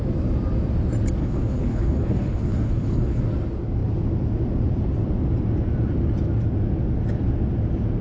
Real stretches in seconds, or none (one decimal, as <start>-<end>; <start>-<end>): 0.0-1.2; 3.2-8.0